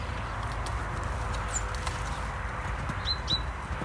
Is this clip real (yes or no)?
yes